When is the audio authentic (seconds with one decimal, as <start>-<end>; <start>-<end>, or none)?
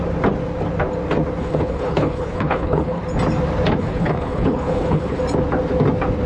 0.0-1.4; 3.0-3.8; 5.2-6.3